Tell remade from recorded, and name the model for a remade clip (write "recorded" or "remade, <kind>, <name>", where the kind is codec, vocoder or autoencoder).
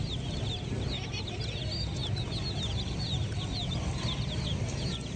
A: recorded